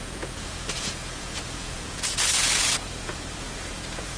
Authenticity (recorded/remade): remade